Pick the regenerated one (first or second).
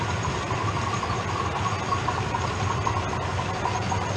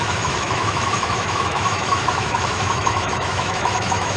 second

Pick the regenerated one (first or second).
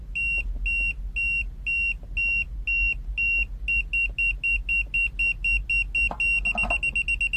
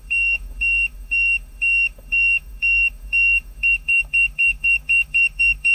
second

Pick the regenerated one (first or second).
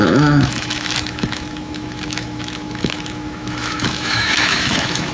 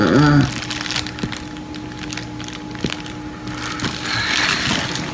first